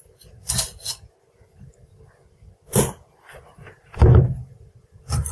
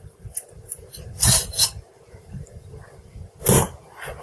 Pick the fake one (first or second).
second